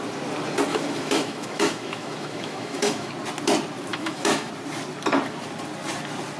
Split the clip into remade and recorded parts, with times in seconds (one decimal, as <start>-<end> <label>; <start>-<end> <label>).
0.0-0.7 recorded; 0.7-3.1 remade; 3.1-3.9 recorded; 3.9-4.5 remade; 4.5-6.4 recorded